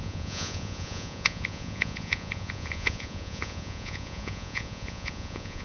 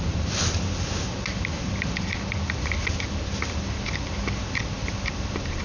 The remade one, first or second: first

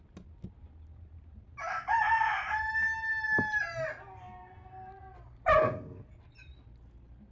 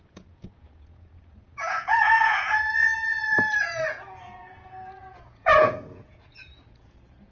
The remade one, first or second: second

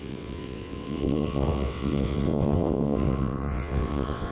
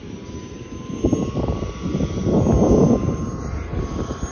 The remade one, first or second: first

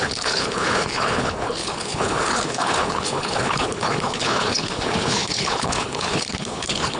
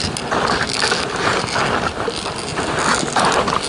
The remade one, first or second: first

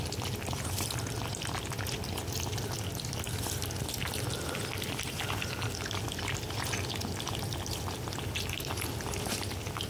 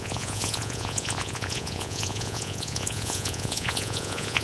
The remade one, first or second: second